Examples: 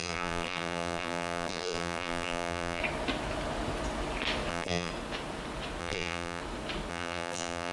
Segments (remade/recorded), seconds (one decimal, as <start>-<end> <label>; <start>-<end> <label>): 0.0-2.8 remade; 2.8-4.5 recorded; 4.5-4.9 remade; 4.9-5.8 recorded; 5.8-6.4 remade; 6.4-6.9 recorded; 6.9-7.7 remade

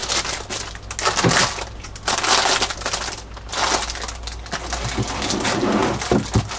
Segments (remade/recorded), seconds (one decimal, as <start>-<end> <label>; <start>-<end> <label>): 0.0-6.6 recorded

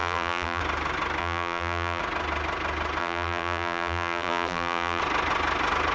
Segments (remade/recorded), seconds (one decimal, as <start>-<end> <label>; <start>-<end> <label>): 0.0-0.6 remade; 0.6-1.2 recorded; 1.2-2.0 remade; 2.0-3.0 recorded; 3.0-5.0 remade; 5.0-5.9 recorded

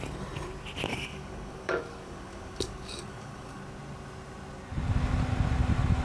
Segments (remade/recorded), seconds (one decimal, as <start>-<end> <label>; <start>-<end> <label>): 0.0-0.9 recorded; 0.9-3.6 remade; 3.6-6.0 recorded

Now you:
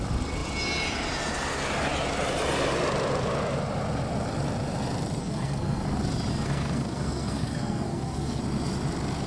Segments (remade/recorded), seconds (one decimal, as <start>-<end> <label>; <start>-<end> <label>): 0.0-5.2 recorded; 5.2-5.8 remade; 5.8-6.3 recorded; 6.3-8.4 remade; 8.4-9.3 recorded